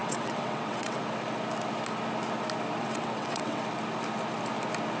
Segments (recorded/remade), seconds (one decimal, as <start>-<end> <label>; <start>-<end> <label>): 0.0-1.0 remade; 1.0-2.8 recorded; 2.8-3.6 remade; 3.6-5.0 recorded